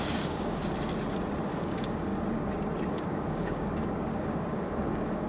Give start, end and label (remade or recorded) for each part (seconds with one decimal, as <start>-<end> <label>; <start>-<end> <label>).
0.0-0.6 remade; 0.6-1.6 recorded; 1.6-2.1 remade; 2.1-2.9 recorded; 2.9-5.3 remade